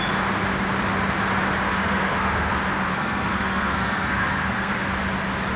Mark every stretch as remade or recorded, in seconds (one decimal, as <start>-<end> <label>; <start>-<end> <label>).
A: 0.0-1.7 recorded; 1.7-2.5 remade; 2.5-2.9 recorded; 2.9-4.7 remade; 4.7-5.6 recorded